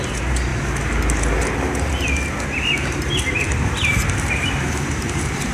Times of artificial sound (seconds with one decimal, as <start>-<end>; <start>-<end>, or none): 0.0-0.5; 1.5-1.9; 4.3-5.5